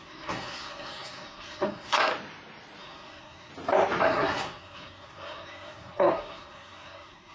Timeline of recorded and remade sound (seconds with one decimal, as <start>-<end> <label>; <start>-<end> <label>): 0.0-2.1 remade; 2.1-2.8 recorded; 2.8-3.5 remade; 3.5-4.0 recorded; 4.0-7.3 remade